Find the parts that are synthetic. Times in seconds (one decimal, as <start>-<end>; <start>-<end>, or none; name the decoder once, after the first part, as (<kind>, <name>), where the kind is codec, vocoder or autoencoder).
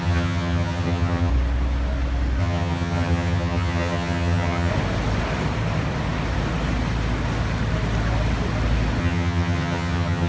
0.0-1.3 (vocoder, HiFi-GAN); 2.4-4.7; 9.0-10.3